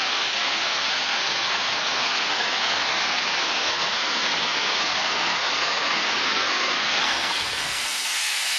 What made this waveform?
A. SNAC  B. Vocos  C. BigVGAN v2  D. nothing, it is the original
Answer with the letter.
A